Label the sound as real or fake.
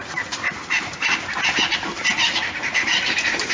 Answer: fake